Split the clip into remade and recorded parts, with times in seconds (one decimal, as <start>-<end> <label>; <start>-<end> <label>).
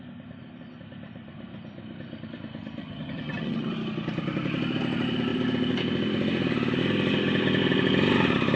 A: 0.0-2.8 recorded; 2.8-3.7 remade; 3.7-8.6 recorded